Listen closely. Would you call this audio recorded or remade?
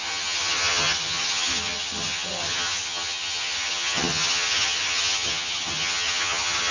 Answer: remade